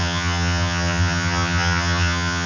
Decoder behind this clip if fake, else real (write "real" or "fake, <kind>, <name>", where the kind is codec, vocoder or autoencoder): fake, vocoder, HiFi-GAN